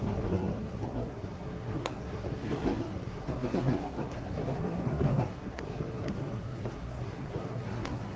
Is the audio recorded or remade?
remade